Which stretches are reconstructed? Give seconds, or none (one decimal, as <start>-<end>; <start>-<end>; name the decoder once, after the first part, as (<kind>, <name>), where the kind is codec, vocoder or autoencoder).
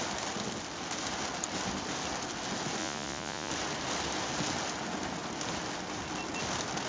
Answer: 2.8-3.5 (vocoder, Vocos)